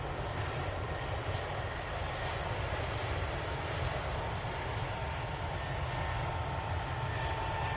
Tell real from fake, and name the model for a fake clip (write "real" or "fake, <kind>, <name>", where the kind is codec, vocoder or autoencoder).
real